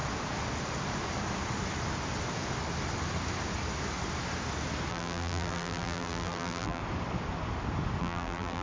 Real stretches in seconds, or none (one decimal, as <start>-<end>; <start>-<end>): 0.0-4.9; 6.8-8.0